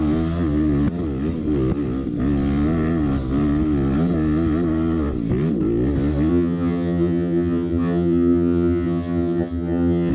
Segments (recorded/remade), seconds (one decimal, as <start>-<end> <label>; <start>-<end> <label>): 0.0-6.3 recorded; 6.3-10.1 remade